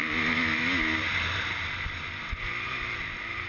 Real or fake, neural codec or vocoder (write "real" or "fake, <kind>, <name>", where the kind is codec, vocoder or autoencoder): real